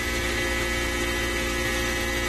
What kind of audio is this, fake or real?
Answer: real